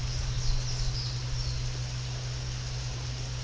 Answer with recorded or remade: recorded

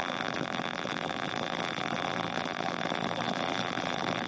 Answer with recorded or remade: remade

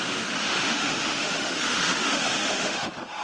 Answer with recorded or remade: remade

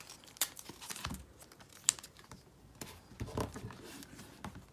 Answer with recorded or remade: recorded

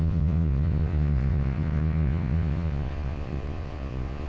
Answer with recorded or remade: remade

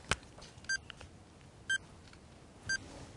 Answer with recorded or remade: recorded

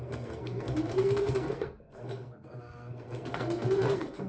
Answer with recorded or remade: remade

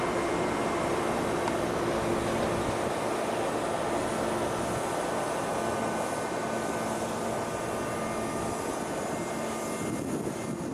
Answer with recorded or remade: recorded